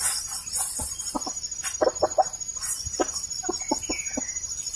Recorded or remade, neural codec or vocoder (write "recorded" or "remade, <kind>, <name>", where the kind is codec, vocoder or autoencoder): recorded